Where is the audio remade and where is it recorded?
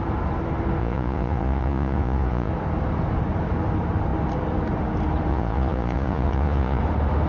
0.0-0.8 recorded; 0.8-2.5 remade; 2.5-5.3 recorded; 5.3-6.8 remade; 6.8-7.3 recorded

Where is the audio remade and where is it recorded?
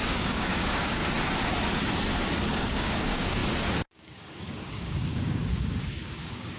0.0-1.0 remade; 1.0-2.6 recorded; 2.6-3.4 remade; 3.4-3.9 recorded; 3.9-6.6 remade